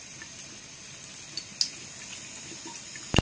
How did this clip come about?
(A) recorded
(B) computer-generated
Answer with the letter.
A